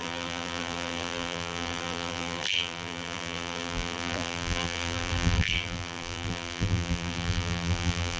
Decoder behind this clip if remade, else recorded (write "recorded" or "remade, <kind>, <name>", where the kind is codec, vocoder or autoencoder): remade, vocoder, BigVGAN v2